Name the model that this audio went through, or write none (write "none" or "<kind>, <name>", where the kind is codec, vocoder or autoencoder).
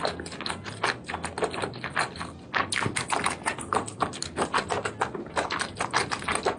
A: none